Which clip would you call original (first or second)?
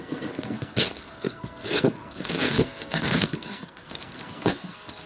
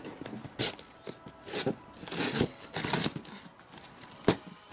second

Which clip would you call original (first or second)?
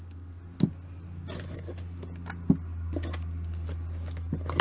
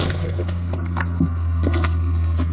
first